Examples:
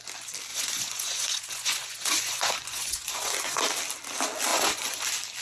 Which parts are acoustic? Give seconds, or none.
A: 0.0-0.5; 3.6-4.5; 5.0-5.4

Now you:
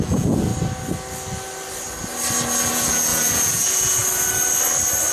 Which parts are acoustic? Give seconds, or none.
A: 0.5-2.7; 4.0-5.1

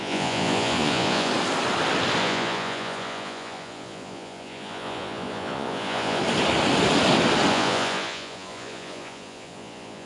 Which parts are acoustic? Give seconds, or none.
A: 1.3-2.2; 6.2-7.5

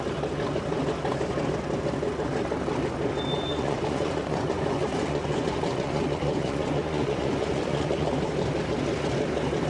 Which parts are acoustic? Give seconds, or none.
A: 0.0-3.5; 8.1-9.7

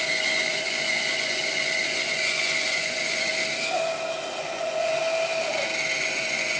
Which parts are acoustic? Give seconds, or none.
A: 3.3-4.4; 5.0-6.0